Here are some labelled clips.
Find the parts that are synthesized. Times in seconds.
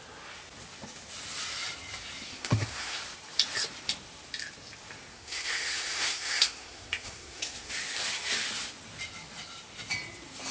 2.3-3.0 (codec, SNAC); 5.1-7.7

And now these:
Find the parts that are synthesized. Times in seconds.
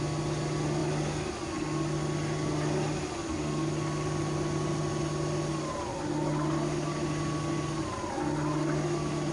none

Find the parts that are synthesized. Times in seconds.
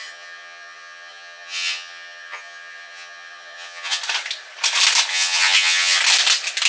0.0-4.0 (vocoder, HiFi-GAN); 5.1-6.0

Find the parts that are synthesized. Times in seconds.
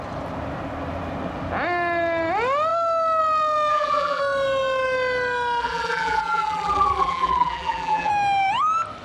3.7-4.2 (vocoder, BigVGAN v2); 5.6-8.1